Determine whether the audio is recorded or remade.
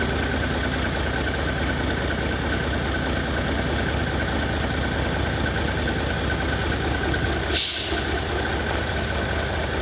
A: recorded